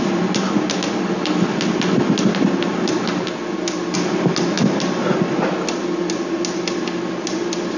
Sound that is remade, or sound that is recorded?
recorded